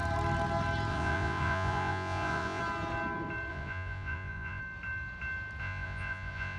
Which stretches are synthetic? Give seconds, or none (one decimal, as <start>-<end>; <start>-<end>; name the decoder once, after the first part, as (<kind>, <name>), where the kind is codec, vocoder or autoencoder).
0.9-2.6 (vocoder, Vocos); 3.5-4.6; 5.6-6.6